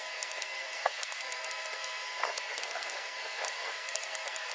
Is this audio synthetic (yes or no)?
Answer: yes